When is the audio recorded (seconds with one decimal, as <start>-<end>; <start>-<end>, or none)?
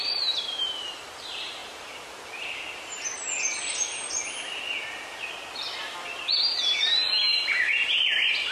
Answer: 1.6-6.6